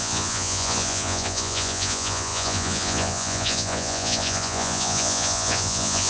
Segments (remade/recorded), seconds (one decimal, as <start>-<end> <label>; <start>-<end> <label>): 0.0-6.1 remade